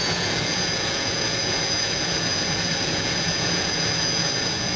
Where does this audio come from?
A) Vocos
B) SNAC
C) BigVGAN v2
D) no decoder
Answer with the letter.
A